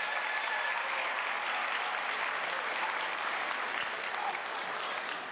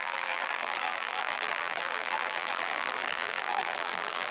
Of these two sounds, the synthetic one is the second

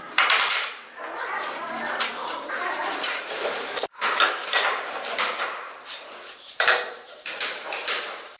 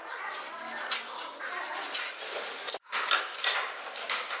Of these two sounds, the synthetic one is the first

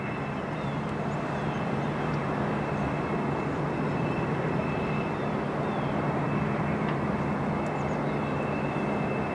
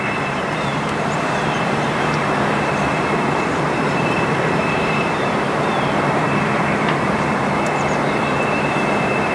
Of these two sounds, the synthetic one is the second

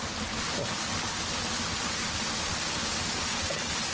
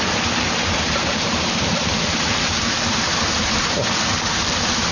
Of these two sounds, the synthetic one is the second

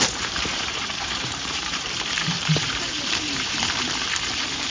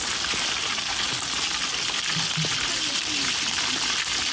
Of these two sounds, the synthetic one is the first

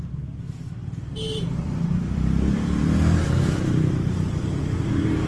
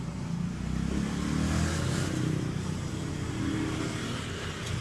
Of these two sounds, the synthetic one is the first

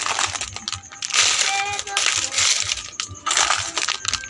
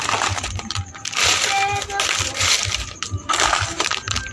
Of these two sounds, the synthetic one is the second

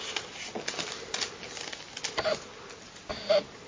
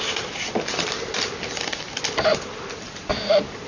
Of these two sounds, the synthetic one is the second